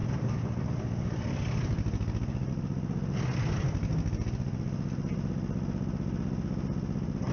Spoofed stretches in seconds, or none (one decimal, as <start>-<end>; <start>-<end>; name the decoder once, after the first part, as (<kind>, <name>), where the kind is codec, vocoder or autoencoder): none